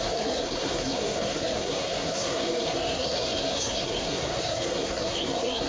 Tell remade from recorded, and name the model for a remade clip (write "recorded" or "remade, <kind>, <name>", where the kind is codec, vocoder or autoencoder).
remade, codec, SNAC